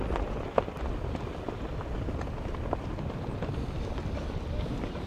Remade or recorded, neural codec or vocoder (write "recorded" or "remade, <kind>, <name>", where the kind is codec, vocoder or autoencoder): recorded